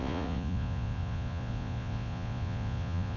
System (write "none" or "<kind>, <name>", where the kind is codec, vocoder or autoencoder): vocoder, Vocos